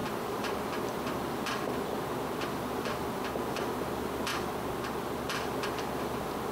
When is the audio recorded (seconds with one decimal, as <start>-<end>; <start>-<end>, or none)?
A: 3.3-6.5